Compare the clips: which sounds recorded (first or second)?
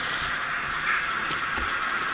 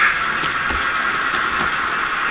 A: second